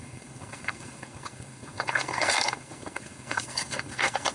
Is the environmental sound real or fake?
fake